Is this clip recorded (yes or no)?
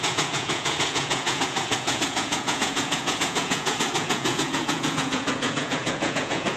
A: no